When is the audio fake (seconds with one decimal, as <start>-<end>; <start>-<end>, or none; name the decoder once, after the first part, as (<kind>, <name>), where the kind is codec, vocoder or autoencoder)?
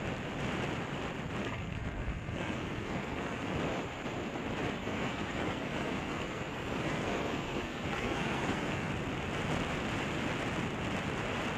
1.4-3.6 (codec, SNAC); 4.8-8.9